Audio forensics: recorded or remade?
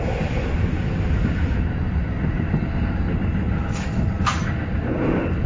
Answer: recorded